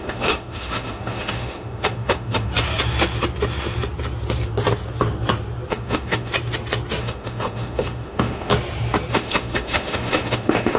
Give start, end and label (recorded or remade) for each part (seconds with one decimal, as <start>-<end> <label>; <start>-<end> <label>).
0.0-2.5 remade; 2.5-5.7 recorded; 5.7-6.3 remade; 6.3-7.0 recorded; 7.0-8.5 remade; 8.5-9.1 recorded; 9.1-10.8 remade